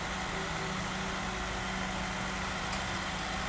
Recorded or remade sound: recorded